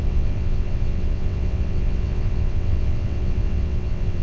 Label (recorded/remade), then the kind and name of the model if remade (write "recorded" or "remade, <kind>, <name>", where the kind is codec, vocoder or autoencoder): remade, vocoder, WaveNeXt